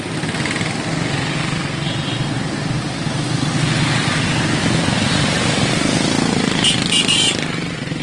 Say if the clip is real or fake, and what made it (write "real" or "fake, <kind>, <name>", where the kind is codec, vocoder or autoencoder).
real